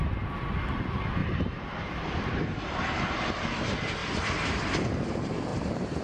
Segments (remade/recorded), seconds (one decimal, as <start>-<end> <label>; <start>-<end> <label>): 0.0-1.2 recorded; 1.2-3.4 remade; 3.4-4.0 recorded; 4.0-4.9 remade; 4.9-5.5 recorded; 5.5-6.0 remade